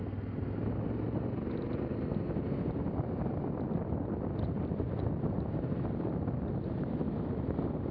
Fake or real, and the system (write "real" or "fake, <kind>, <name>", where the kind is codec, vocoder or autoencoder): real